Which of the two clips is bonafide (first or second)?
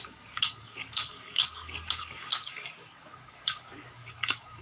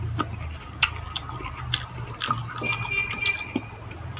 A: second